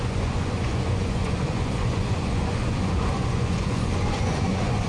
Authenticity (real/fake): fake